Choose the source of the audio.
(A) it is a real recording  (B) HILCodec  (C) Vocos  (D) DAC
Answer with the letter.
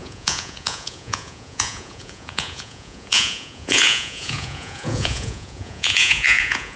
C